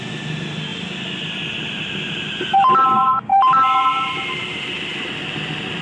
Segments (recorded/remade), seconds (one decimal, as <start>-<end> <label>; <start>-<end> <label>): 0.0-5.8 recorded